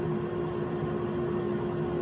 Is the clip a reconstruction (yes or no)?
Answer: no